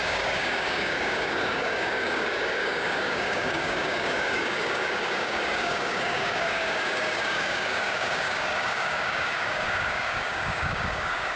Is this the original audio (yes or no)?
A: no